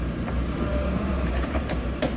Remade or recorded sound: remade